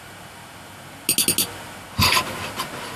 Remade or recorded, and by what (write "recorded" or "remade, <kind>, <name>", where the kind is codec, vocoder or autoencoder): recorded